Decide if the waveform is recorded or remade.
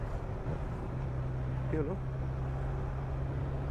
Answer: recorded